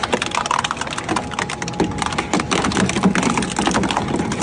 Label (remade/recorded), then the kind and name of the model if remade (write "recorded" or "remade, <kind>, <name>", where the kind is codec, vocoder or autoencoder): recorded